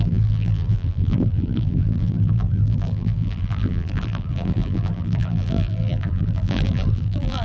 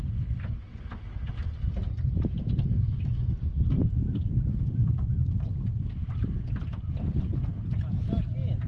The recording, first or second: second